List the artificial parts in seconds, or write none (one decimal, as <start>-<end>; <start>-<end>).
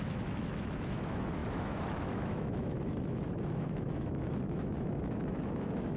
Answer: 0.0-6.0